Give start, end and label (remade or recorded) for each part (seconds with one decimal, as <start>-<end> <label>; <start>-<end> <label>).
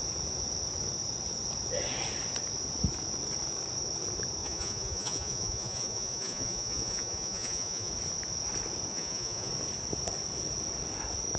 0.0-4.4 recorded; 4.4-7.9 remade; 7.9-8.9 recorded; 8.9-9.5 remade; 9.5-11.4 recorded